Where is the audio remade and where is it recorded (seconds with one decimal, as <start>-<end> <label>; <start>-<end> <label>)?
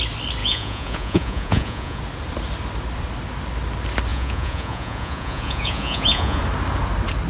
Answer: 0.0-0.4 recorded; 0.4-2.0 remade; 2.0-4.1 recorded; 4.1-6.4 remade; 6.4-7.3 recorded